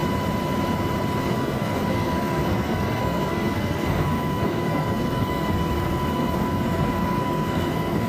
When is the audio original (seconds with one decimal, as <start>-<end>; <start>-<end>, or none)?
0.0-1.2